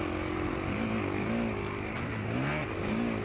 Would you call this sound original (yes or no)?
yes